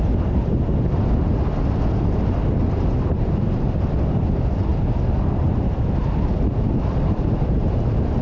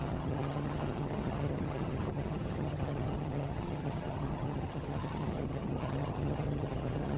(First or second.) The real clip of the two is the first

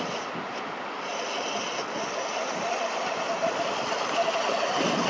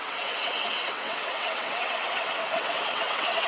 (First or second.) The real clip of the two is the first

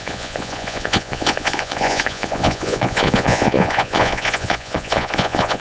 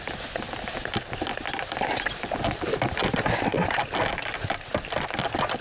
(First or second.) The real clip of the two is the second